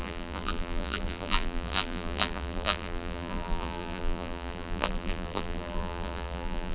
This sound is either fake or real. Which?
fake